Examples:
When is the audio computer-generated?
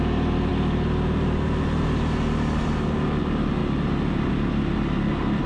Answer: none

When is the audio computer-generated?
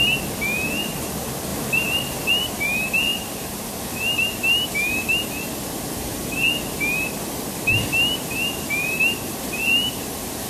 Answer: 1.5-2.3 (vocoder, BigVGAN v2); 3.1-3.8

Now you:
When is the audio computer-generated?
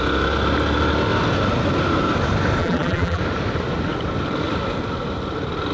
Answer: 2.6-3.2 (vocoder, BigVGAN v2)